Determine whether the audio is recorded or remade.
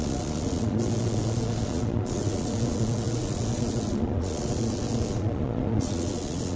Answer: remade